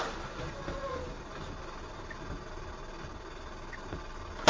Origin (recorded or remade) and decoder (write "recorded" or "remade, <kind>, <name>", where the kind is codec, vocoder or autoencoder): recorded